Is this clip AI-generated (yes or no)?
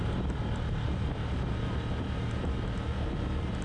no